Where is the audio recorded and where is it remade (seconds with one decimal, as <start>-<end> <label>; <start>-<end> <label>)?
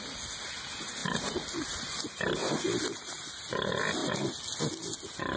0.0-5.4 recorded